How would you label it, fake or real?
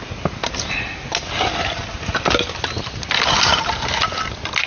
real